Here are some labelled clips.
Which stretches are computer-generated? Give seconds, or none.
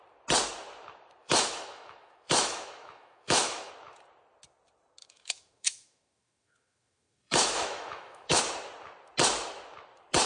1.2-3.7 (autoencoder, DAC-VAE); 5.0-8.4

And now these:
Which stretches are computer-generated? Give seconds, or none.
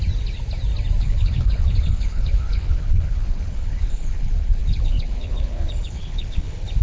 1.0-6.8 (codec, HILCodec)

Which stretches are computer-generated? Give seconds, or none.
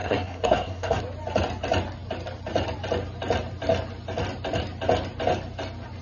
0.0-1.0 (codec, SNAC)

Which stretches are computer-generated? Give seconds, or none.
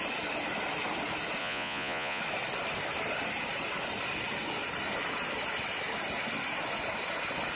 1.4-2.2 (vocoder, Vocos)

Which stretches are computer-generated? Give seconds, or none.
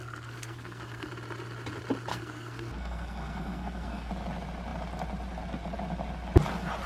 0.0-1.1 (codec, SNAC); 2.1-4.1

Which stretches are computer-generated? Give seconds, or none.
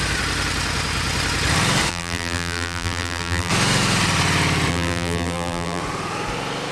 1.9-3.5 (vocoder, BigVGAN v2); 4.7-5.8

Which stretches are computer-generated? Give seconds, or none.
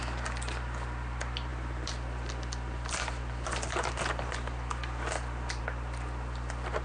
1.5-5.6 (vocoder, BigVGAN v2)